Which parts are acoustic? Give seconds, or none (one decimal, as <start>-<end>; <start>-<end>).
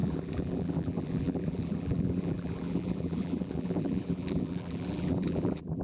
none